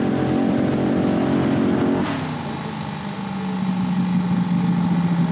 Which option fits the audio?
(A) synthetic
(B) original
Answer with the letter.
B